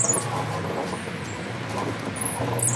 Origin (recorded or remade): recorded